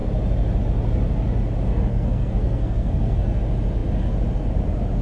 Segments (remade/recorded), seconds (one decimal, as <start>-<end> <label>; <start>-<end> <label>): 0.0-1.9 recorded; 1.9-3.4 remade; 3.4-5.0 recorded